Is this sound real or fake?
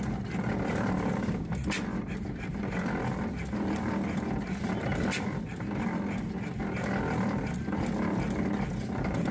real